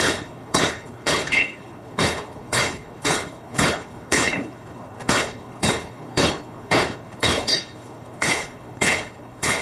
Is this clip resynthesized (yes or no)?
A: yes